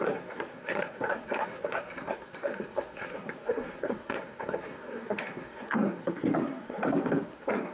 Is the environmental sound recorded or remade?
remade